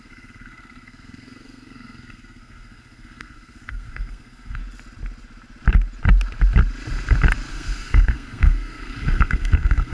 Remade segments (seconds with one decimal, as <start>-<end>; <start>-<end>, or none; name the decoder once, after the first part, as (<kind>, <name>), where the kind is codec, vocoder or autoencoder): 0.0-4.6 (codec, SNAC); 7.5-9.9